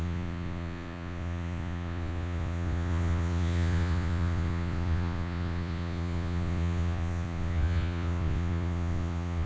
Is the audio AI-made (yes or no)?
yes